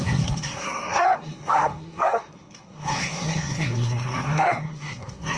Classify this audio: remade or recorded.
remade